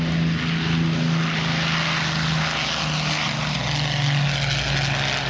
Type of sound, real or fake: real